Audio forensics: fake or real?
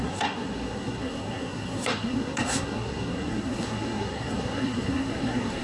fake